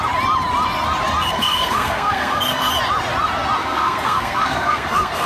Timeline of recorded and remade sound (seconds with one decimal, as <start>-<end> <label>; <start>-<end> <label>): 0.0-1.3 recorded; 1.3-2.7 remade; 2.7-3.6 recorded; 3.6-5.3 remade

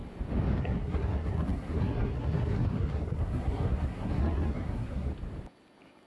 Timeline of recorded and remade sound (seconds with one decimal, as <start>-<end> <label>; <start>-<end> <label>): 0.0-0.6 recorded; 0.6-5.1 remade; 5.1-6.1 recorded